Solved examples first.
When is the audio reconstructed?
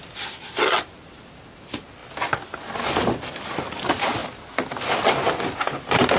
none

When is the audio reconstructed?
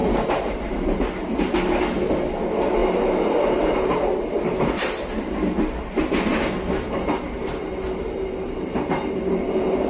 0.0-1.0 (vocoder, BigVGAN v2)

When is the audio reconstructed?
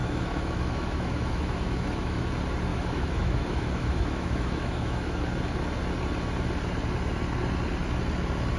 0.0-2.2 (autoencoder, DAC-VAE); 2.7-5.2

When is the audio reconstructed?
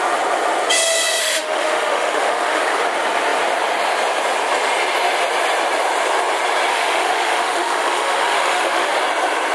1.2-2.8 (autoencoder, DAC-VAE); 6.7-9.0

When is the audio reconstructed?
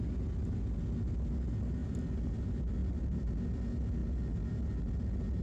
1.8-2.4 (vocoder, BigVGAN v2); 2.8-3.3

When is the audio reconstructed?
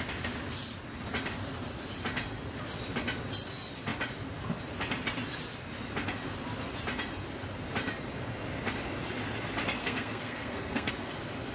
9.8-10.9 (codec, SNAC)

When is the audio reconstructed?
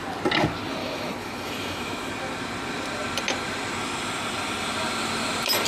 0.8-2.1 (autoencoder, DAC-VAE)